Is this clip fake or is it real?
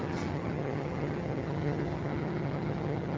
fake